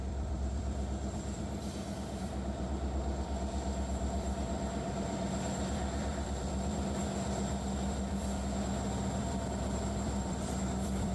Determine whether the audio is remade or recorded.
remade